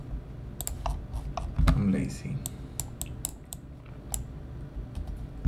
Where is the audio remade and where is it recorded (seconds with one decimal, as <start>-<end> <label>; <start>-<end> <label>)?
0.0-3.3 recorded; 3.3-3.9 remade; 3.9-5.5 recorded